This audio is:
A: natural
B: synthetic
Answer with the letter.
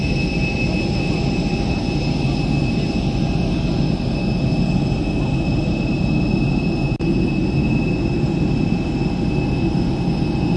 A